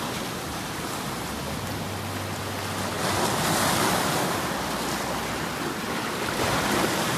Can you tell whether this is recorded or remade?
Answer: recorded